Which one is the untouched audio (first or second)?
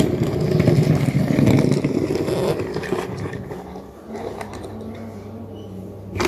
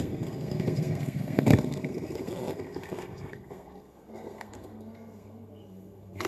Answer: first